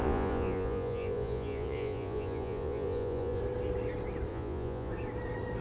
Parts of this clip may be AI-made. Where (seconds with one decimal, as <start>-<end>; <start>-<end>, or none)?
0.0-3.4; 4.3-4.9